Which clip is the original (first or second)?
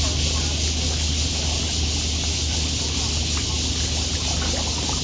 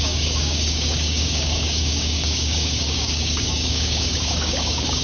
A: first